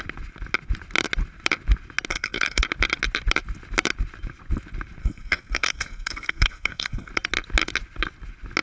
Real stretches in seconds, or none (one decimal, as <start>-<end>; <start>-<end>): 0.0-2.1; 2.6-5.0; 7.1-8.6